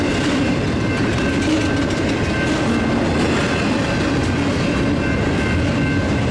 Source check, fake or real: real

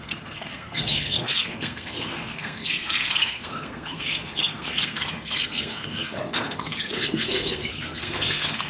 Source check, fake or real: fake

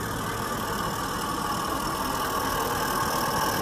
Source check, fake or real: real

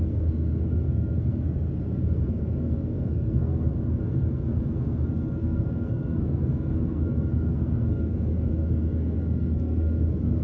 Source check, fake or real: fake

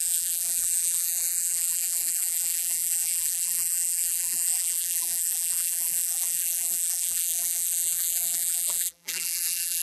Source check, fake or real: fake